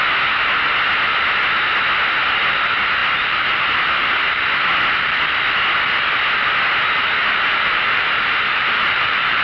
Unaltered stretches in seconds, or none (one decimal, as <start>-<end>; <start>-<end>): 0.0-7.2